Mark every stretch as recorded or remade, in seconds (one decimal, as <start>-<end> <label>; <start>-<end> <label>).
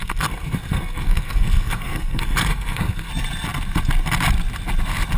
0.0-3.1 remade; 3.1-5.2 recorded